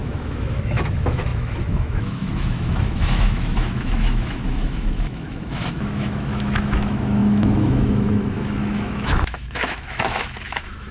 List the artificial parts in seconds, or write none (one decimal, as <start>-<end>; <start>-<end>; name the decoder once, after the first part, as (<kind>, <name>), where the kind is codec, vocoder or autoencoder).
0.0-10.9 (autoencoder, DAC-VAE)